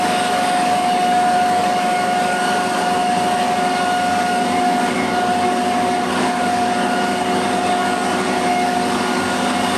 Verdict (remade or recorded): remade